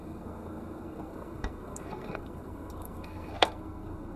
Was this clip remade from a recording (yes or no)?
yes